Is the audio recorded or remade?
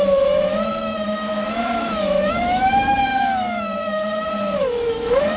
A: remade